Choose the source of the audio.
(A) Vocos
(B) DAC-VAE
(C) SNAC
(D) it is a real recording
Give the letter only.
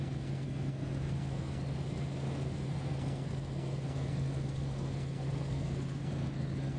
C